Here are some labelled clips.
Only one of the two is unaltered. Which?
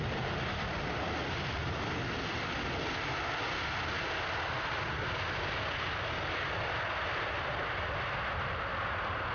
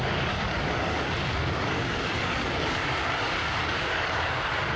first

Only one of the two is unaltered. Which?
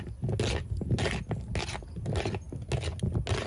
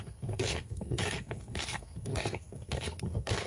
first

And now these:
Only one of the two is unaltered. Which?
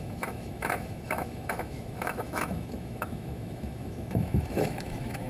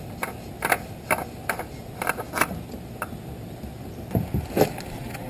second